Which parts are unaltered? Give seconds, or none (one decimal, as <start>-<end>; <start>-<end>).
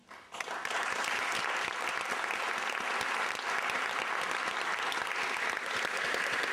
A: 0.0-6.5